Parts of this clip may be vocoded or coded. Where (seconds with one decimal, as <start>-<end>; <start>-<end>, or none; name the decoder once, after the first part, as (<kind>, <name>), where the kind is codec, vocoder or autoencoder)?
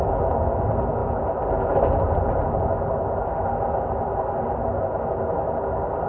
none